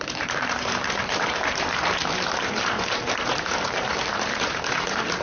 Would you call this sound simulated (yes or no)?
yes